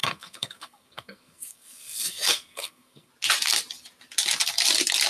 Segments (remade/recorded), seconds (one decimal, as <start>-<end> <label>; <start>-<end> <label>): 0.0-3.1 remade; 3.1-5.1 recorded